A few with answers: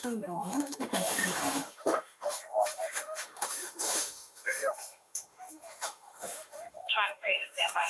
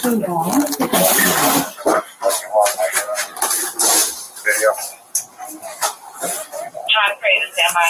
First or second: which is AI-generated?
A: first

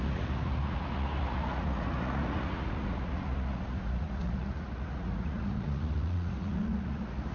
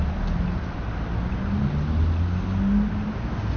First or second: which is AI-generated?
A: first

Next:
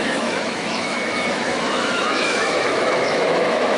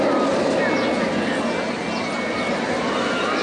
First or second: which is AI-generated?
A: first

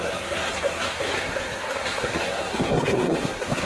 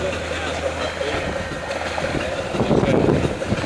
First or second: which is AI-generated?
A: first